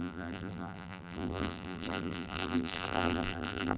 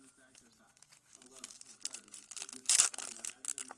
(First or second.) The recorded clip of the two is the second